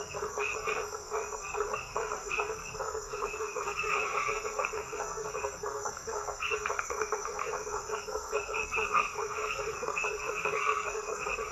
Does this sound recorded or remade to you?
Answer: remade